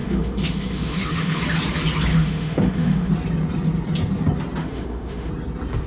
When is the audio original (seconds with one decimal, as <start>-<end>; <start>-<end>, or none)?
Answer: 1.4-2.1; 3.1-4.6; 5.3-5.9